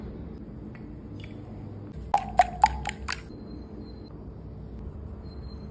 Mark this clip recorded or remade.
recorded